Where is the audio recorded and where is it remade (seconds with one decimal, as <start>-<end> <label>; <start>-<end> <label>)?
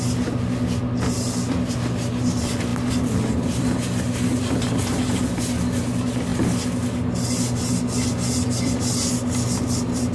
0.0-10.1 recorded